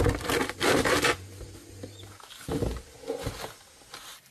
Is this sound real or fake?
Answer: real